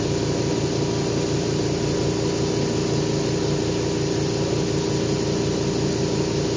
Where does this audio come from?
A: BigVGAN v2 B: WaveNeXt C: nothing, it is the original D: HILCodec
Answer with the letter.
C